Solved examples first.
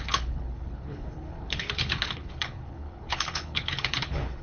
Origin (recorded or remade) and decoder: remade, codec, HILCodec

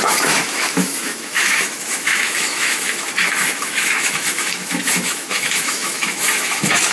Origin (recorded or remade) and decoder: remade, autoencoder, DAC-VAE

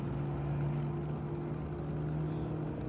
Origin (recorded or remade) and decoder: recorded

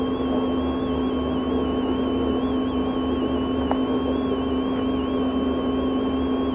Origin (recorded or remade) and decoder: recorded